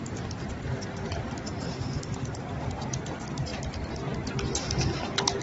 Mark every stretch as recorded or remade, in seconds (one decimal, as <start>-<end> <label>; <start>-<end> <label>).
0.0-1.5 recorded; 1.5-2.9 remade; 2.9-5.4 recorded